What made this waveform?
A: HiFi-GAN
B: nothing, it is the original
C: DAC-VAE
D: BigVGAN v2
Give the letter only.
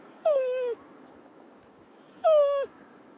C